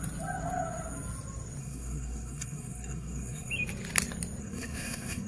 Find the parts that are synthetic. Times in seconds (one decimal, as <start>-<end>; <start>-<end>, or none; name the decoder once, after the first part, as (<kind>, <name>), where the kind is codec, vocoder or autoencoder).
1.6-3.5 (codec, SNAC); 4.4-5.3

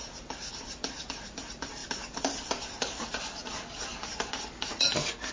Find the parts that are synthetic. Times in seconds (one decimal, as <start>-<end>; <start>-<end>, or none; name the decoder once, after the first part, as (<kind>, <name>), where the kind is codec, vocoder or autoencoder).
none

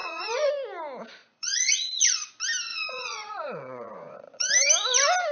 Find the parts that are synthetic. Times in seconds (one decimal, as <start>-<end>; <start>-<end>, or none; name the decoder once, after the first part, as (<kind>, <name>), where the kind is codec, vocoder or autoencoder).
0.0-0.5 (vocoder, Vocos); 1.2-2.3; 2.7-4.5

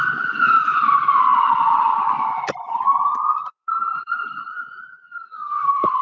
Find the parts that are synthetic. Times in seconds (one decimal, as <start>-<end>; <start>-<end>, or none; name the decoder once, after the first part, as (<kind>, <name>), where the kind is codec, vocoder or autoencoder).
3.5-4.8 (vocoder, BigVGAN v2)

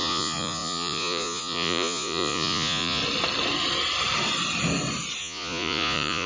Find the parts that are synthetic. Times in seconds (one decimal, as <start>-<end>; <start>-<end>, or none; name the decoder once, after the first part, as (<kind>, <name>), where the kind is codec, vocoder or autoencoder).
0.0-3.0 (vocoder, Vocos); 5.2-6.3

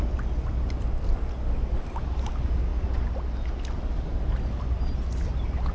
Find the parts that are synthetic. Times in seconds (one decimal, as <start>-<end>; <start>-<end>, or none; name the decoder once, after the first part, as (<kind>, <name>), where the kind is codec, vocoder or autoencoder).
none

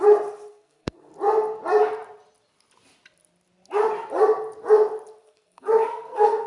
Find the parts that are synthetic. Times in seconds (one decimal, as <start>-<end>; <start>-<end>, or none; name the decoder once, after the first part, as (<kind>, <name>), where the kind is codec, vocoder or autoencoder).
0.5-1.1 (codec, SNAC); 5.2-6.5